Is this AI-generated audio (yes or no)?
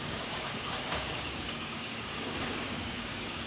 yes